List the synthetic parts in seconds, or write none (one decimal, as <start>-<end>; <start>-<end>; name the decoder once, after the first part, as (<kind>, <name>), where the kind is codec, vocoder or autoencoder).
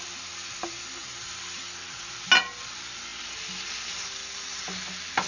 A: none